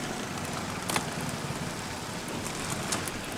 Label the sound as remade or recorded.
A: recorded